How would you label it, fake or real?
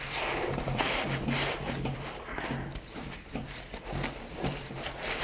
fake